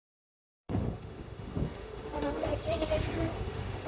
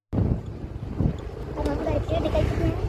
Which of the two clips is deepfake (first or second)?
first